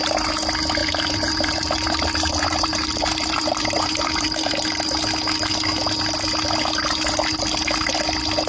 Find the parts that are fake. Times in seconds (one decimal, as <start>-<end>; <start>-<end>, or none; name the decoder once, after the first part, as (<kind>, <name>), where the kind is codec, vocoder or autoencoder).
0.8-4.5 (vocoder, BigVGAN v2)